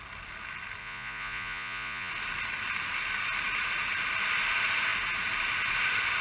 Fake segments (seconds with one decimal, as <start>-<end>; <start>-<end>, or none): 0.8-2.1